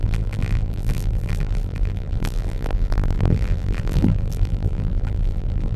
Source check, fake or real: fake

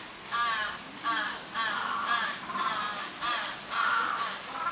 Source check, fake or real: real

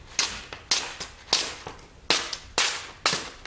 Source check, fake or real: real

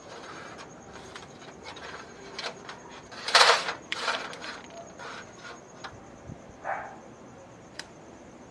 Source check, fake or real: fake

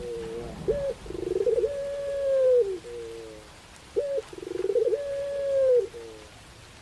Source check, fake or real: fake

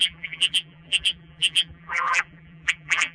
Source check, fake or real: fake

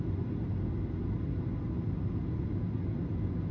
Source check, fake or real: real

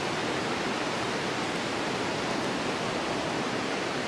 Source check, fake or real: fake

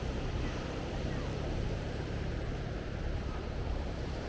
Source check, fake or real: fake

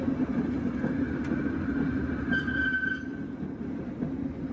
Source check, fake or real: real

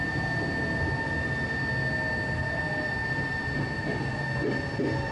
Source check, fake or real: real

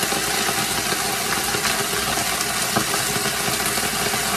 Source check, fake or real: real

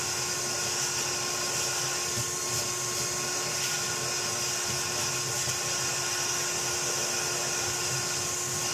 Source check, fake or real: real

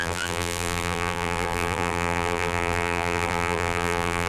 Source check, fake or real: fake